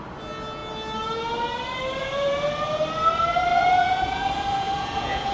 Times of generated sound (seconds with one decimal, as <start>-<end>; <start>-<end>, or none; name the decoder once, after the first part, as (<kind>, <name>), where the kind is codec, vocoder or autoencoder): 2.0-2.8 (vocoder, Vocos); 3.5-5.3